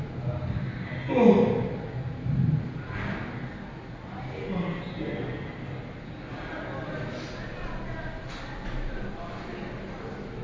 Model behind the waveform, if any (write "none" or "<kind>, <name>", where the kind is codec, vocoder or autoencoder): none